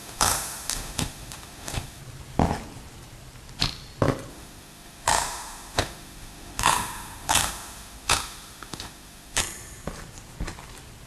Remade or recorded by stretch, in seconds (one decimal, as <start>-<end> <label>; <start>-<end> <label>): 0.0-2.0 remade; 2.0-4.3 recorded; 4.3-9.4 remade; 9.4-11.1 recorded